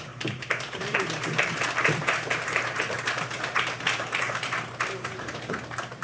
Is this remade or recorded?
remade